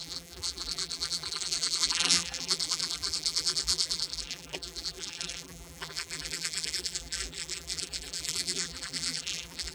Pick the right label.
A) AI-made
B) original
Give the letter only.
A